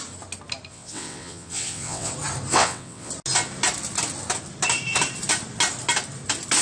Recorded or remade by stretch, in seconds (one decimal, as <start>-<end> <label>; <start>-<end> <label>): 0.0-0.7 recorded; 0.7-2.1 remade; 2.1-2.5 recorded; 2.5-3.1 remade; 3.1-6.6 recorded